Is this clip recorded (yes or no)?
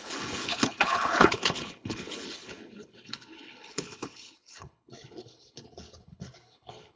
no